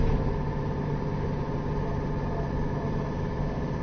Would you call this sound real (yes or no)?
yes